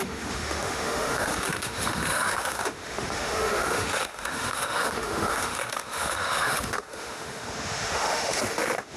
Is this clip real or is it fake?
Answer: fake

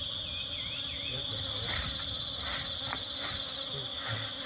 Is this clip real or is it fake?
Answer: real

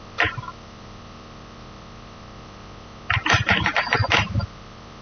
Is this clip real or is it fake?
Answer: real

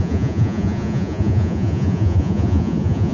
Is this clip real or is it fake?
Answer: fake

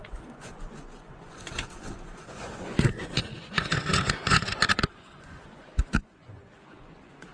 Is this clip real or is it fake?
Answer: fake